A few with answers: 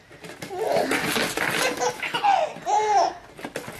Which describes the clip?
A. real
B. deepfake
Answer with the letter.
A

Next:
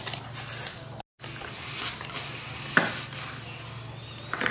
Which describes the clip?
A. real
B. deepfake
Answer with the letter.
A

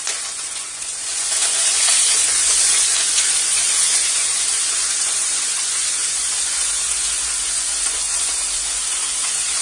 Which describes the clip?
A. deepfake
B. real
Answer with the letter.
A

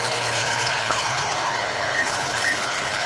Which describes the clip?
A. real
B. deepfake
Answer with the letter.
B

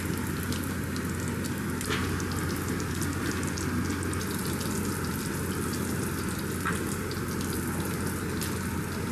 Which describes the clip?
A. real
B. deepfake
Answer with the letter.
A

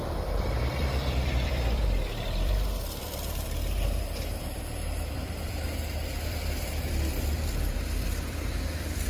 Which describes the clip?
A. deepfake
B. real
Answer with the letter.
A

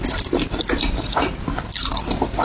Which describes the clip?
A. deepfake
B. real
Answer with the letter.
B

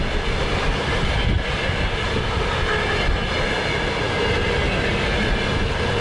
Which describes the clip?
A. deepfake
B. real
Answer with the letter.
B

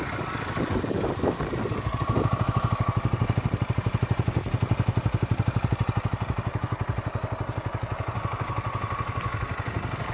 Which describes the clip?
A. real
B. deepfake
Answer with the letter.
A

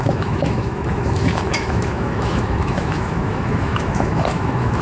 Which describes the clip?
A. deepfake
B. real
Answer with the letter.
A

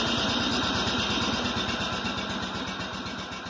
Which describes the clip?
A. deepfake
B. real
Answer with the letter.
B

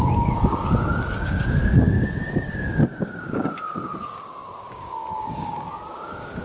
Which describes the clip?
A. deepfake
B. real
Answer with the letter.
A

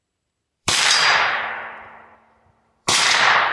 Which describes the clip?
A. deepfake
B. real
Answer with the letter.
A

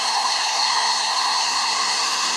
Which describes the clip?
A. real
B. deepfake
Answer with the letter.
B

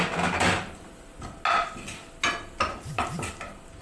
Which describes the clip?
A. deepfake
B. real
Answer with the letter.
B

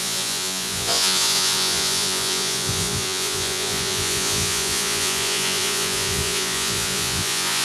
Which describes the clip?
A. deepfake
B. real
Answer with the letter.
A